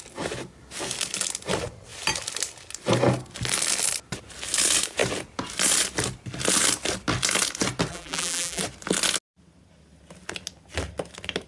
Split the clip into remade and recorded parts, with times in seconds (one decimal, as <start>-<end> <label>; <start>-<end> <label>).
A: 0.0-7.9 recorded; 7.9-8.6 remade; 8.6-11.5 recorded